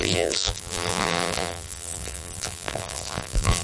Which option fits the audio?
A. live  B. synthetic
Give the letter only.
B